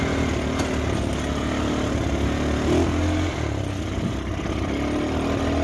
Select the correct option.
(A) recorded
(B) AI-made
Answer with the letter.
A